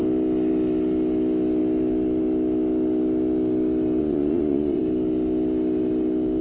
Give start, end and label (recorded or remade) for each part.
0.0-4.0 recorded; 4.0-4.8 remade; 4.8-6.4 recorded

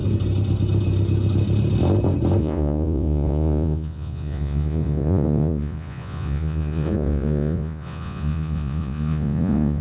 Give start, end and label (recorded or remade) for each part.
0.0-2.4 recorded; 2.4-9.8 remade